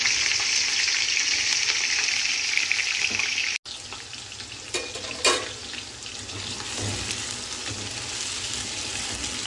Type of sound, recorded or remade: recorded